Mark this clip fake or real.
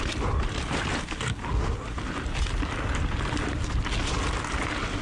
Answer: real